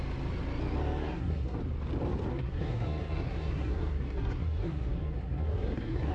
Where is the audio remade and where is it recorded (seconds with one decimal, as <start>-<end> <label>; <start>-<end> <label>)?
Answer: 0.0-1.0 recorded; 1.0-1.6 remade; 1.6-2.3 recorded; 2.3-6.1 remade